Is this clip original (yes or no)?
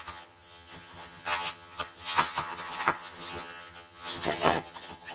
no